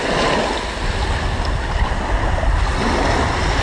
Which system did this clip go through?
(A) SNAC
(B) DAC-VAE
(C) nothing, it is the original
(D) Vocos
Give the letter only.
C